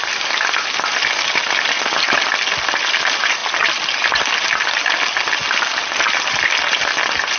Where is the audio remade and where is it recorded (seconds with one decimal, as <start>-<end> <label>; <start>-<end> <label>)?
0.0-7.4 recorded